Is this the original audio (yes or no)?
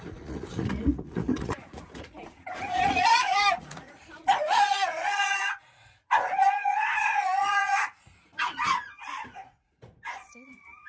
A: no